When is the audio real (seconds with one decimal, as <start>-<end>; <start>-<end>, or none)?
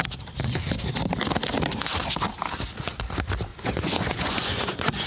0.0-3.5